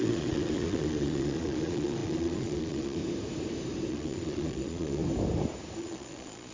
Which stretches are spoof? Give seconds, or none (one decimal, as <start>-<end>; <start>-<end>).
0.0-3.0; 3.9-5.0; 5.8-6.5